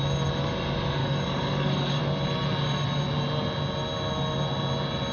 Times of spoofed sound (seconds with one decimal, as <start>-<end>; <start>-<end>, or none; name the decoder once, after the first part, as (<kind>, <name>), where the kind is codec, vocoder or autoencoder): 1.0-2.0 (codec, DAC)